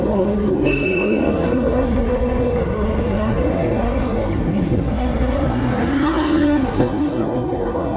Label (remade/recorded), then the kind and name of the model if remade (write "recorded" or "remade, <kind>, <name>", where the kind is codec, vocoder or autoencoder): remade, codec, SNAC